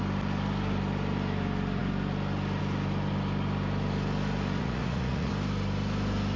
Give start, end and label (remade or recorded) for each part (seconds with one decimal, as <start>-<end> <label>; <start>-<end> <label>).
0.0-4.6 recorded; 4.6-5.3 remade; 5.3-6.4 recorded